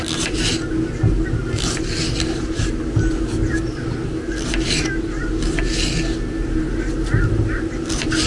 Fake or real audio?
real